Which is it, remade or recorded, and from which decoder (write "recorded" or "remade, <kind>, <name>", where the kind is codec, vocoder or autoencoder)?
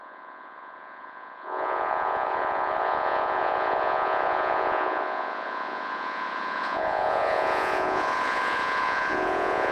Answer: remade, vocoder, Vocos